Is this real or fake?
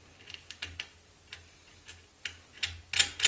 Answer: real